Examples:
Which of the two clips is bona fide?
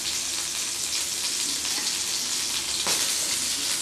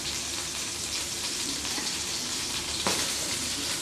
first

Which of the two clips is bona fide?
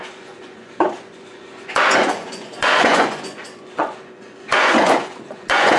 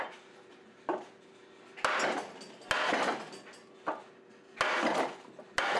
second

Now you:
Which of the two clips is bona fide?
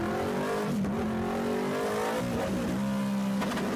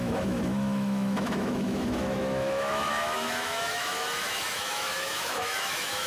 first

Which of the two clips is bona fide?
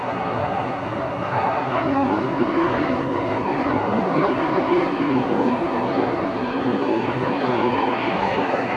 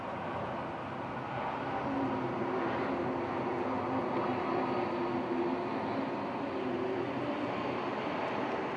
second